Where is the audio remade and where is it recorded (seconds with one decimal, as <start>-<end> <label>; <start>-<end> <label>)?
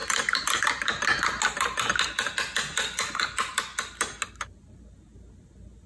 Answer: 0.0-5.9 recorded